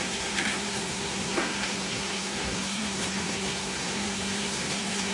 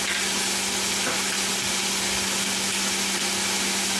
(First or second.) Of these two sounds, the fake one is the first